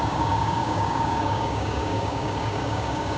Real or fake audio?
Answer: fake